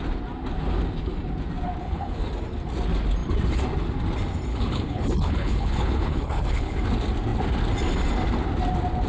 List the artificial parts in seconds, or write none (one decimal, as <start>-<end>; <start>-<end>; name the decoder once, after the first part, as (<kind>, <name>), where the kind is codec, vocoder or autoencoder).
1.8-2.3 (codec, HILCodec); 4.5-6.8